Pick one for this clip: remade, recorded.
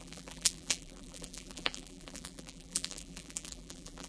remade